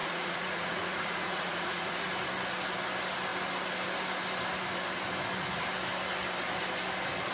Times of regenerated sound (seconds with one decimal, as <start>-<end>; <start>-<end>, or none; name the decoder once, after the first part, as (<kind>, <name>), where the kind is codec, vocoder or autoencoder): 0.0-2.1 (vocoder, Vocos)